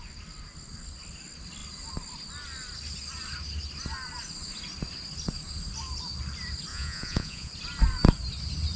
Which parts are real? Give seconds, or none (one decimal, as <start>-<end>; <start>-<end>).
0.0-6.7; 7.5-8.8